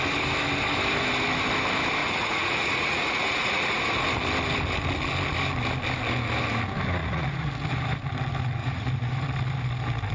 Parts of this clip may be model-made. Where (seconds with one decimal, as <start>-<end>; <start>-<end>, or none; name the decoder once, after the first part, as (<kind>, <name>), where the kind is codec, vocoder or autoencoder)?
2.0-3.8 (vocoder, Vocos); 7.0-7.5; 8.6-9.1